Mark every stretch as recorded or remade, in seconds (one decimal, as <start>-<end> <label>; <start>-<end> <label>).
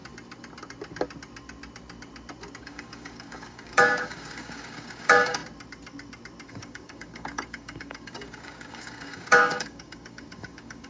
0.0-2.6 recorded; 2.6-5.4 remade; 5.4-6.5 recorded; 6.5-10.9 remade